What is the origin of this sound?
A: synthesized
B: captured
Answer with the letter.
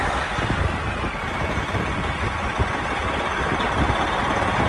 B